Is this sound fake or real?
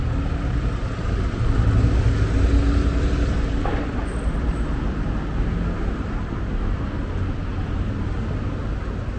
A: real